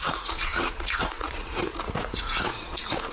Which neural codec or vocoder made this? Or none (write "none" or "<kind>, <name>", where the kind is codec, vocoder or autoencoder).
vocoder, Vocos